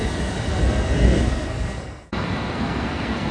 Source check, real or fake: fake